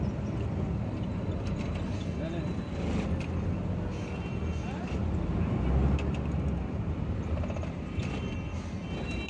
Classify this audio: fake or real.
real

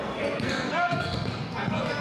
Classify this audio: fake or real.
fake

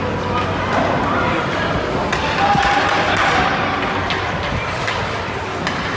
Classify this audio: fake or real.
real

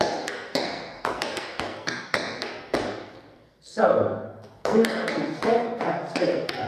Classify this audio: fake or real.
fake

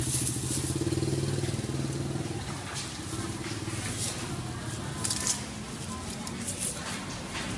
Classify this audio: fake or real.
real